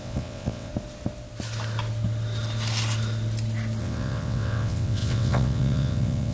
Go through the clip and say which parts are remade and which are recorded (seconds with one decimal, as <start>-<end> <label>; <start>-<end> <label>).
0.0-0.7 remade; 0.7-3.8 recorded; 3.8-6.3 remade